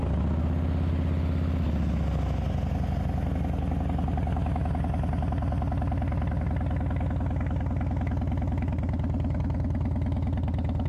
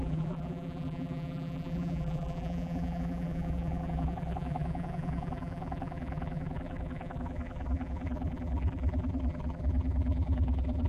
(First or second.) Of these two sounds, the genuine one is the first